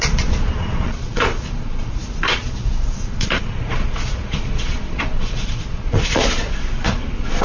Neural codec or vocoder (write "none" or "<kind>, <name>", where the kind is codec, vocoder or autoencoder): vocoder, Vocos